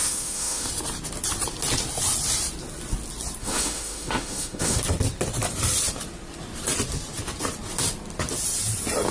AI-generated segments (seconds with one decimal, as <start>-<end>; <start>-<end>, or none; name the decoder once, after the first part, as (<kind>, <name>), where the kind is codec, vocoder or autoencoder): 0.0-0.7 (autoencoder, DAC-VAE); 3.4-4.8